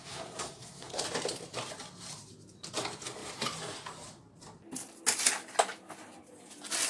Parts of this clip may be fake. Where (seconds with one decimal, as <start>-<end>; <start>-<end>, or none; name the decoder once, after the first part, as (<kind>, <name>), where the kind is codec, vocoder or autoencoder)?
0.0-1.0 (codec, SNAC)